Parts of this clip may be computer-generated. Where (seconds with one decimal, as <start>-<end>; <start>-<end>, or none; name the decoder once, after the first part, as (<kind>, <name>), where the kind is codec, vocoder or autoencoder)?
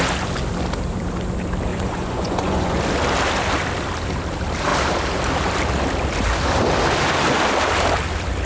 1.7-2.8 (vocoder, Vocos)